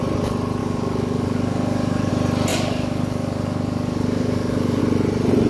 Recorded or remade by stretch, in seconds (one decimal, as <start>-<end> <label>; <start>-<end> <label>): 0.0-0.6 recorded; 0.6-2.1 remade; 2.1-2.5 recorded; 2.5-4.8 remade; 4.8-5.5 recorded